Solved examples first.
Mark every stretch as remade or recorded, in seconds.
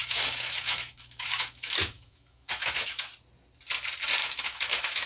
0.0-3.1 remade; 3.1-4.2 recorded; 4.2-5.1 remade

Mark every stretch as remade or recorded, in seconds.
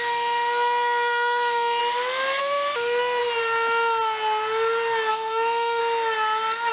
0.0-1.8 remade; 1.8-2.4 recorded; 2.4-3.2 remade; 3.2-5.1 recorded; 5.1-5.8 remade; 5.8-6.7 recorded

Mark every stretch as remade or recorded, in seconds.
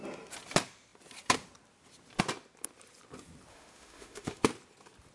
0.0-3.5 recorded; 3.5-4.4 remade; 4.4-5.1 recorded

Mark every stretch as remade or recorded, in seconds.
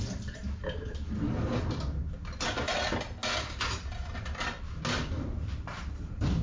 0.0-6.4 recorded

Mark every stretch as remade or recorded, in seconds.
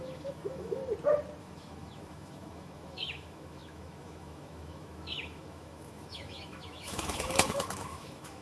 0.0-0.8 remade; 0.8-1.4 recorded; 1.4-8.4 remade